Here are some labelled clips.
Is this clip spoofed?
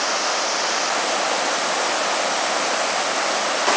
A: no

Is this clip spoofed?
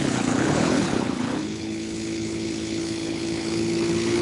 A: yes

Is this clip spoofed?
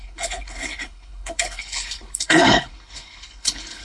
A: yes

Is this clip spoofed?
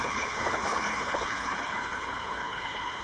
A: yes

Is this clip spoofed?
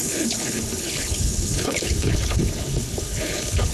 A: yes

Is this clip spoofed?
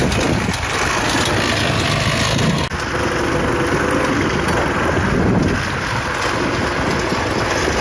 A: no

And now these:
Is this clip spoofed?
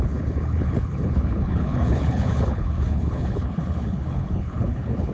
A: yes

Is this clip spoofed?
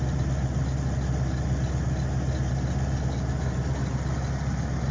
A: no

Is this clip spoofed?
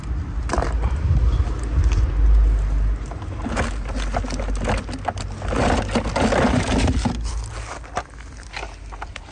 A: no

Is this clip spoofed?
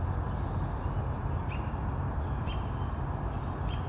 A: no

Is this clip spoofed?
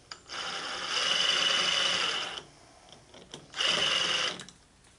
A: no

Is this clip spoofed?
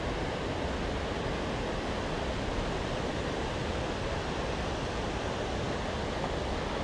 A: no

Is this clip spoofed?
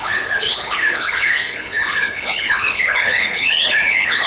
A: yes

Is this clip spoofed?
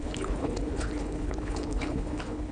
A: yes